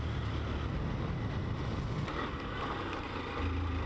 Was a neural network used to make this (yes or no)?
no